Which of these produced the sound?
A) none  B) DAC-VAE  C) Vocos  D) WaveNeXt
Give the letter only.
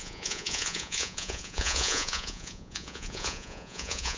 C